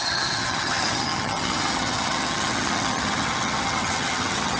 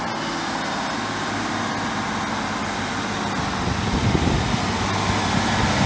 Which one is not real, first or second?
first